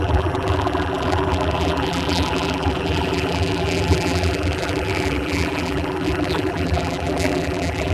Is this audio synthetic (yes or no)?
yes